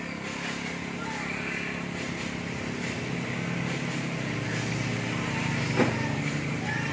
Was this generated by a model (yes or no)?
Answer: no